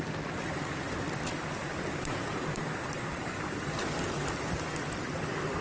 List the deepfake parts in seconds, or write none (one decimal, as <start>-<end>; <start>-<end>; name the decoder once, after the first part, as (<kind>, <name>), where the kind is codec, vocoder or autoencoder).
2.3-4.2 (vocoder, BigVGAN v2)